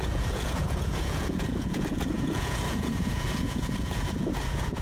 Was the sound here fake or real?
fake